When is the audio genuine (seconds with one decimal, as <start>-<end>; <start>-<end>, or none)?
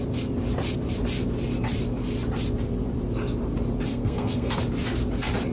0.0-3.9; 4.5-5.5